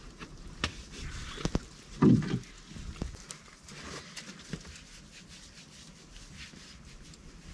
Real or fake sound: real